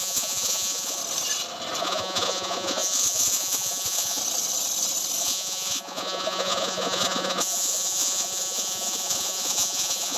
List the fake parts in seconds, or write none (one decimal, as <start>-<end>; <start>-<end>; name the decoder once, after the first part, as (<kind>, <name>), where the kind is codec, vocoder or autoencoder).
0.0-1.0 (vocoder, Vocos); 1.8-4.2; 5.2-10.2